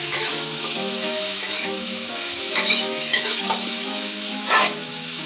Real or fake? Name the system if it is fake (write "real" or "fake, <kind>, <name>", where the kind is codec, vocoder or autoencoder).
fake, autoencoder, DAC-VAE